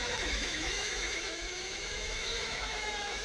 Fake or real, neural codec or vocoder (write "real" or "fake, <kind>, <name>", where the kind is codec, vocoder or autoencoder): fake, autoencoder, DAC-VAE